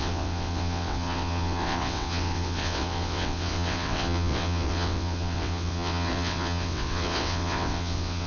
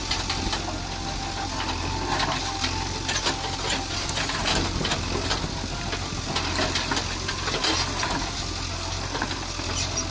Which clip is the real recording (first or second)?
second